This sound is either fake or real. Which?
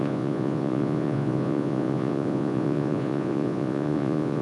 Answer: fake